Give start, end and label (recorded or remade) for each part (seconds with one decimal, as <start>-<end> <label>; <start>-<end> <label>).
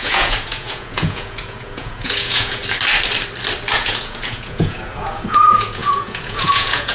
0.0-2.6 remade; 2.6-3.7 recorded; 3.7-6.9 remade